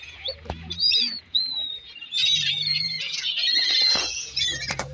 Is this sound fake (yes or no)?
yes